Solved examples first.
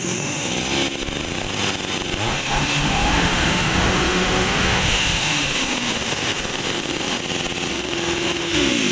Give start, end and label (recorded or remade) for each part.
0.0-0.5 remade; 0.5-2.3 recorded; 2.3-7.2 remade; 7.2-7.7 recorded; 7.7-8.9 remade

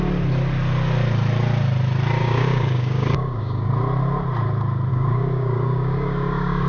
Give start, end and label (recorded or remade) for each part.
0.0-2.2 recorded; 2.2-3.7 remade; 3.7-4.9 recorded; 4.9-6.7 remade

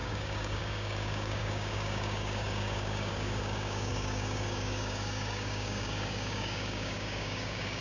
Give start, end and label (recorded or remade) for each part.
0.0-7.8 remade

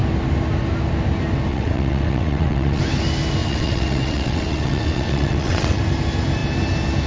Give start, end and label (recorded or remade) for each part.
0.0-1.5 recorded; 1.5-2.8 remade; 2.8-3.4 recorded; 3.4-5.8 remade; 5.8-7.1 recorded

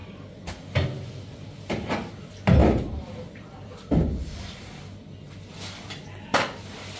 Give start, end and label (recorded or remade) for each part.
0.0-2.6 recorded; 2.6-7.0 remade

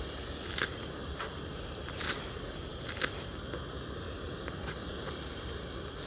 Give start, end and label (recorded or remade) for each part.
0.0-6.1 recorded